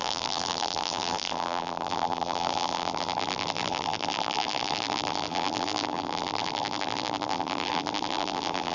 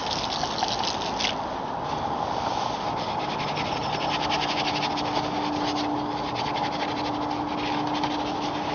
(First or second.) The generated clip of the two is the first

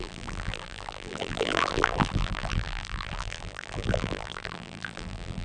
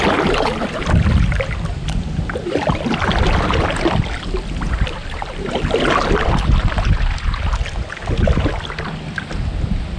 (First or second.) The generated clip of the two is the first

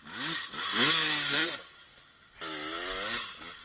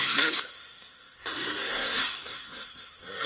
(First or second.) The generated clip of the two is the second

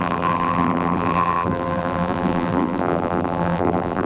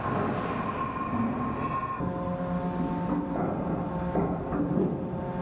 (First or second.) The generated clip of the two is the first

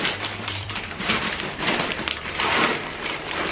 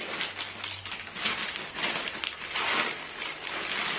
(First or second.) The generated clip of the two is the first